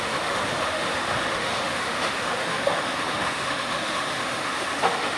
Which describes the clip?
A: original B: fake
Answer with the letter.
B